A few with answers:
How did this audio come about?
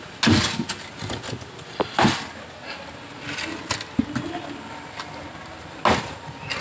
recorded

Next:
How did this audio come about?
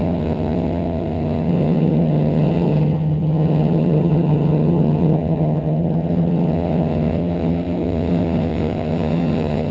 remade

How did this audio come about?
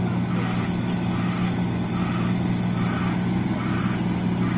recorded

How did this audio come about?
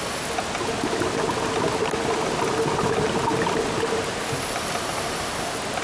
recorded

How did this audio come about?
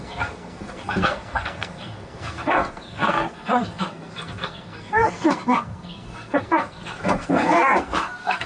remade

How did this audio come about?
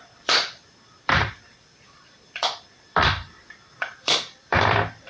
remade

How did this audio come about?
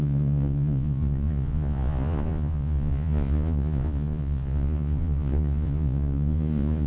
remade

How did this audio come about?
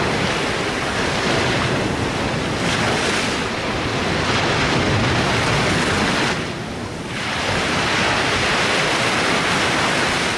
recorded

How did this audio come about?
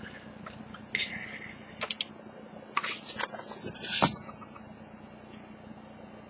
recorded